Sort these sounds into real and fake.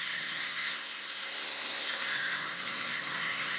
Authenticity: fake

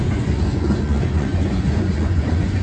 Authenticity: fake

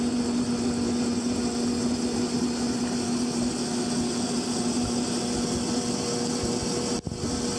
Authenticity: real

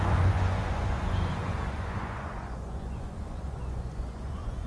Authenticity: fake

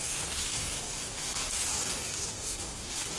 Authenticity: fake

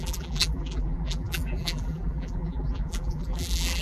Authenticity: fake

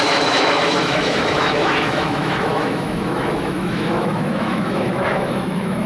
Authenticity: fake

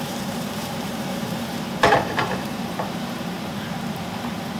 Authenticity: fake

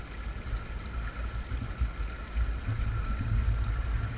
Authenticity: real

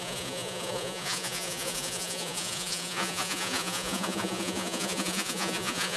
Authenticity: fake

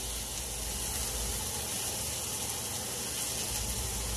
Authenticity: real